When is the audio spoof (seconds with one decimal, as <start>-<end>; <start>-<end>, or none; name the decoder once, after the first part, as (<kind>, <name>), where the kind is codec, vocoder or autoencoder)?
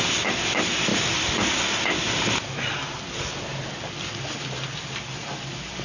none